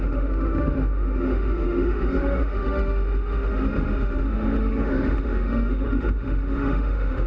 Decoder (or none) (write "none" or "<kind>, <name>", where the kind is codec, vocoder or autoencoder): autoencoder, DAC-VAE